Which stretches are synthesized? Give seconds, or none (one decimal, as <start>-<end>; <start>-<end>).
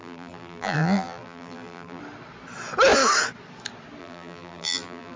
0.0-2.0; 4.0-5.2